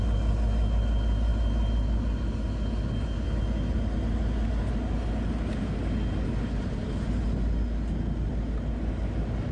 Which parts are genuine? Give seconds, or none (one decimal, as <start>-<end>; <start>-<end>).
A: 0.0-9.5